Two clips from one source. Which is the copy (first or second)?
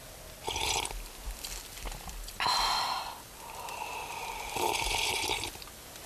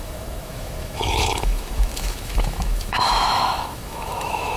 second